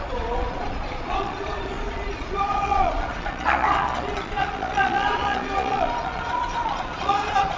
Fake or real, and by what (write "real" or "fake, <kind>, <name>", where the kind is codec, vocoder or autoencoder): fake, vocoder, Vocos